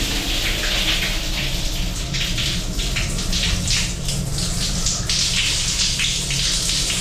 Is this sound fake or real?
real